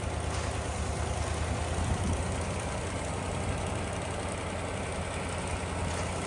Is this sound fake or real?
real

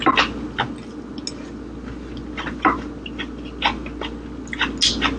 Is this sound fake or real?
real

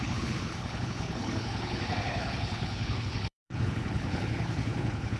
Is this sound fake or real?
fake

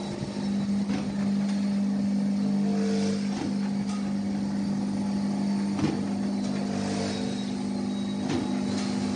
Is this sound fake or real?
real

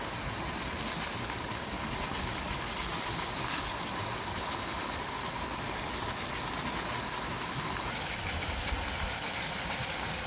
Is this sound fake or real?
real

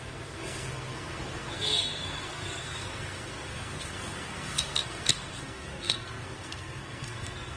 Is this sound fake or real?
fake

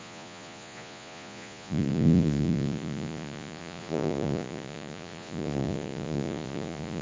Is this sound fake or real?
fake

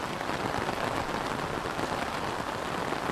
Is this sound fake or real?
real